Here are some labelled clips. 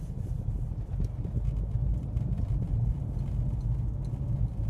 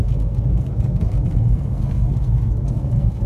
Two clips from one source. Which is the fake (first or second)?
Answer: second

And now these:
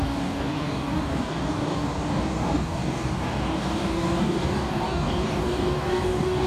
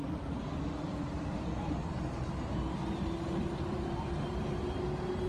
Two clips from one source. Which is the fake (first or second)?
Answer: first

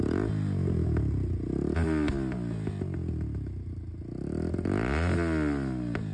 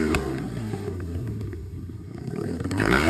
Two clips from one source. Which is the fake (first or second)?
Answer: second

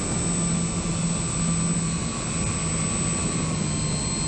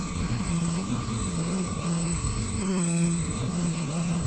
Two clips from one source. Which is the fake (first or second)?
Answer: second